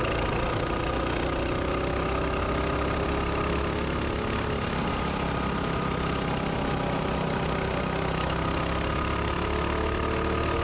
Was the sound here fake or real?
real